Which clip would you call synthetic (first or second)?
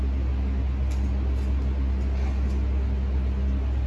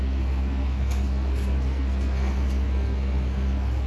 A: second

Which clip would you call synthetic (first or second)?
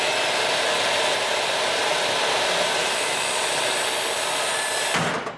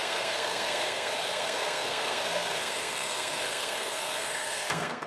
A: second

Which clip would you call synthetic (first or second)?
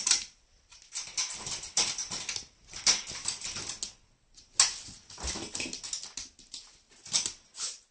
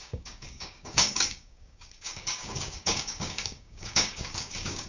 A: second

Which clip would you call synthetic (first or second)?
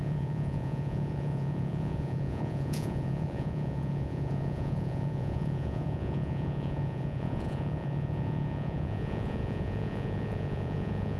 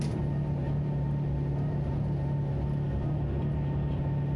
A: first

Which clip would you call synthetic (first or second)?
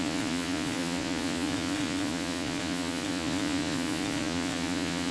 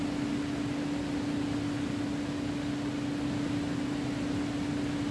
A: first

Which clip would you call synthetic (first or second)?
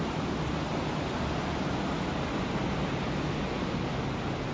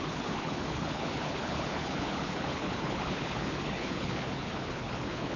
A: second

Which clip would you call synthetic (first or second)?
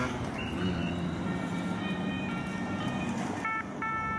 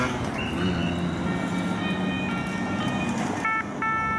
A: first